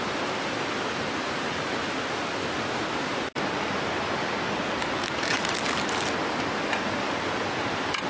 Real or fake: real